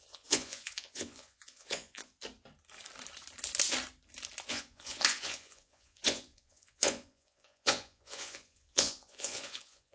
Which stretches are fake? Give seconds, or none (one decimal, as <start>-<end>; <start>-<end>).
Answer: 0.0-2.1; 4.5-9.9